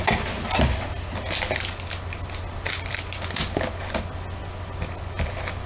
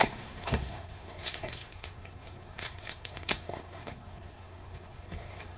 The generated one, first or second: second